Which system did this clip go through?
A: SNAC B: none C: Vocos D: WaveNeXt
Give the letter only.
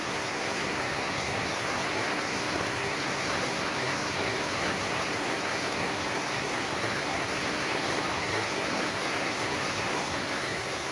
A